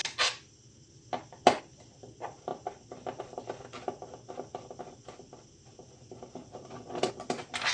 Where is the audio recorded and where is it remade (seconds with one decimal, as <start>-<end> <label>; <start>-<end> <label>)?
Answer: 0.0-7.7 recorded